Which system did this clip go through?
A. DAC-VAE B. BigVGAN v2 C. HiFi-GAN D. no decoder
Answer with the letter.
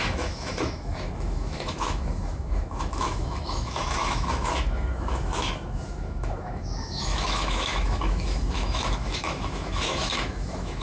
A